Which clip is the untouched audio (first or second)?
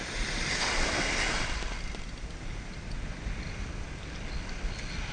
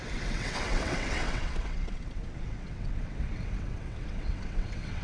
first